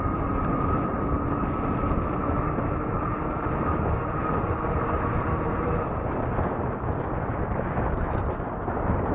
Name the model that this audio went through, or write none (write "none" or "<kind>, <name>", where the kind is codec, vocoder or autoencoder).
none